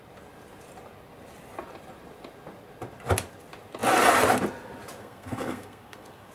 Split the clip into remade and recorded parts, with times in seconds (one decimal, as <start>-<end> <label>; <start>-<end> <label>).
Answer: 0.0-5.0 recorded; 5.0-6.3 remade